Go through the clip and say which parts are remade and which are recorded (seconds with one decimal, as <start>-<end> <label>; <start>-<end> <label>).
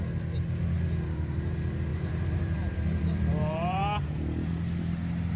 0.0-1.9 recorded; 1.9-4.2 remade; 4.2-5.4 recorded